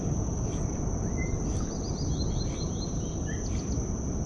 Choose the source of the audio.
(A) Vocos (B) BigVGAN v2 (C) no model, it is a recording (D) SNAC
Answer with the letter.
C